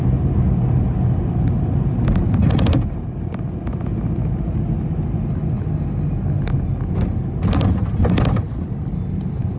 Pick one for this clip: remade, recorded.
recorded